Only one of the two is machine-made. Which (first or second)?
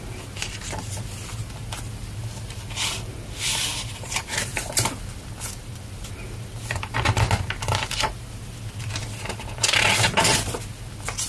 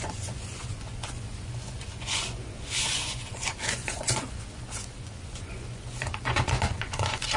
second